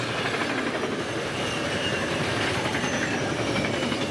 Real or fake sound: real